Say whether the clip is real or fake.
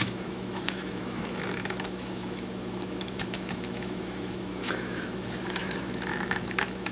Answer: fake